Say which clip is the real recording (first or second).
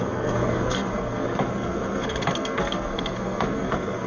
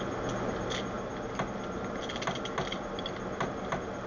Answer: second